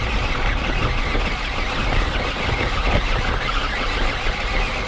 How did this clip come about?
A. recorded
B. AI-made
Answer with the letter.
A